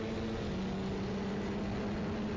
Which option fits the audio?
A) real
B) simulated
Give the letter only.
A